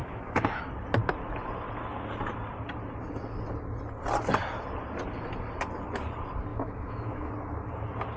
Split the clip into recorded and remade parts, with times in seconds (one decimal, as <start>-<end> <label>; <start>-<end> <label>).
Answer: 0.0-0.6 remade; 0.6-6.5 recorded; 6.5-7.3 remade; 7.3-8.2 recorded